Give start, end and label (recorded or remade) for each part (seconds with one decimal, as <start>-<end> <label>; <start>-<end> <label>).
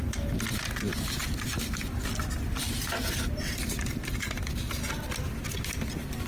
0.0-0.9 recorded; 0.9-4.3 remade; 4.3-6.3 recorded